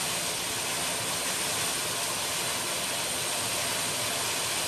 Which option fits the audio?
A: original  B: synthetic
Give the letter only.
A